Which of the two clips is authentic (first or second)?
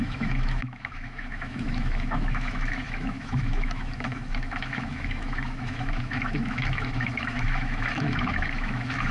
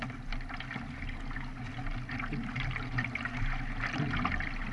second